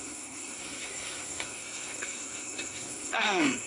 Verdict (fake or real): fake